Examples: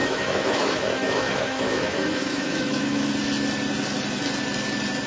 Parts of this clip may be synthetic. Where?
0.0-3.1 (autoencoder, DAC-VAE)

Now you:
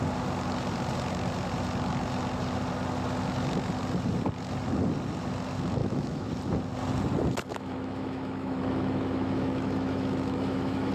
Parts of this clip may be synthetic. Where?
5.8-6.3 (autoencoder, DAC-VAE); 7.5-10.9

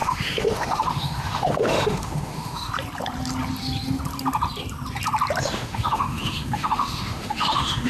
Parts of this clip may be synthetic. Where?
0.0-2.7 (autoencoder, DAC-VAE); 5.4-7.9

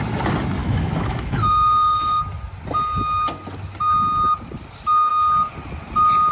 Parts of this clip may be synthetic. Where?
0.6-2.2 (autoencoder, DAC-VAE)

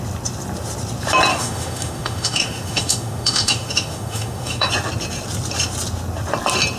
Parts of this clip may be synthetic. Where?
1.3-4.7 (autoencoder, DAC-VAE)

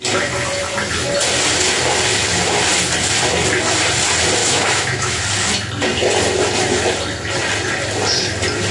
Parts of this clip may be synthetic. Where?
4.4-5.2 (autoencoder, DAC-VAE)

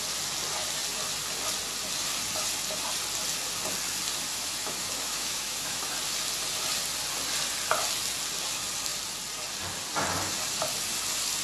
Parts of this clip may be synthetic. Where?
4.3-5.9 (autoencoder, DAC-VAE)

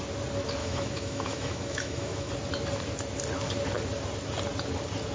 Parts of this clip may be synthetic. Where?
0.6-2.3 (autoencoder, DAC-VAE)